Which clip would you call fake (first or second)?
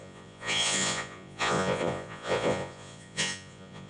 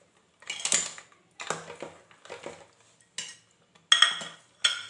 first